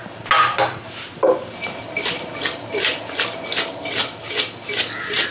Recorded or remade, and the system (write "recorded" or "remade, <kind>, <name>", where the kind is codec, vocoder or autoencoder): recorded